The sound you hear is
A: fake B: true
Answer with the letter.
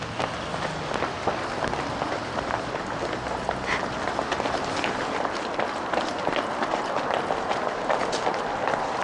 B